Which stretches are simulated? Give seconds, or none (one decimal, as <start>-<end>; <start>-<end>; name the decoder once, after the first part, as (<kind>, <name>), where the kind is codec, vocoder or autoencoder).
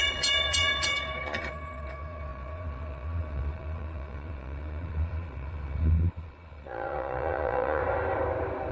0.0-7.8 (vocoder, Vocos)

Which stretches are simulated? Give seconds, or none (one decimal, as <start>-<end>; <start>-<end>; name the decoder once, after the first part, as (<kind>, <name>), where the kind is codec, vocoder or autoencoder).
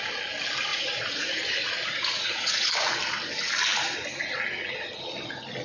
0.7-2.7 (vocoder, Vocos)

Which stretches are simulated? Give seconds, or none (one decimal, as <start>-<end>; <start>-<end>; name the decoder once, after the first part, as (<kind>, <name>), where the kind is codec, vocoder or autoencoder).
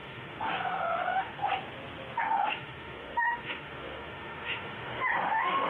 0.0-1.4 (autoencoder, DAC-VAE); 2.2-5.7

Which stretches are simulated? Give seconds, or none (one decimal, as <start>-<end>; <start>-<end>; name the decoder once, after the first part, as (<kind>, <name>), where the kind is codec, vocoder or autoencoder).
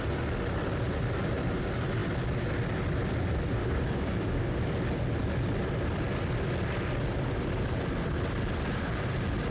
3.6-4.6 (codec, DAC)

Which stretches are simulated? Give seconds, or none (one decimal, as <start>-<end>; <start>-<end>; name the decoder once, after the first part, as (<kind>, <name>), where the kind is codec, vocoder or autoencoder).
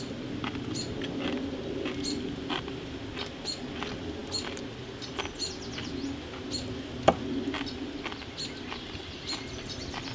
none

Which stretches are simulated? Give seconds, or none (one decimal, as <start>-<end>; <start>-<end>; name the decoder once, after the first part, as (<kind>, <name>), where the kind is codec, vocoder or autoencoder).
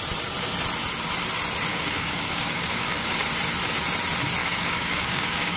1.7-3.3 (codec, DAC); 4.4-5.6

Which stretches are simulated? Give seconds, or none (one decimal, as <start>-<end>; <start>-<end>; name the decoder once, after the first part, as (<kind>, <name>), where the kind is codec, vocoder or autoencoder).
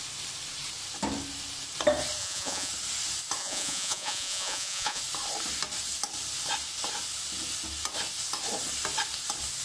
2.2-2.7 (vocoder, Vocos); 3.4-5.0